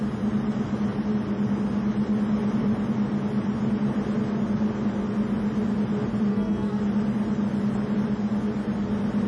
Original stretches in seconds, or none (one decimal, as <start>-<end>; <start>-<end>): 0.0-6.3; 6.8-9.3